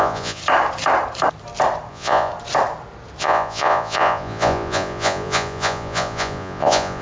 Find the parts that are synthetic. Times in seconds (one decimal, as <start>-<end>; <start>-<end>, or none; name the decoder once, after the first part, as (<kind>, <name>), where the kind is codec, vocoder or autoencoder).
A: 0.0-0.4 (vocoder, Vocos); 1.9-2.3; 3.2-7.0